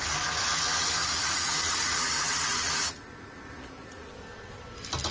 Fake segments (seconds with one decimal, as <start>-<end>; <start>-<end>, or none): 1.0-4.1